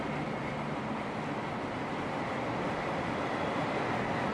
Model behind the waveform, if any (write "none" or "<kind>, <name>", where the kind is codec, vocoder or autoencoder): none